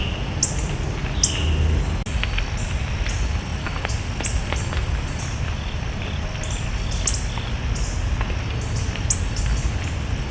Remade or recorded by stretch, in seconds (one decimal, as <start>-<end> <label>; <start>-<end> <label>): 0.0-10.3 recorded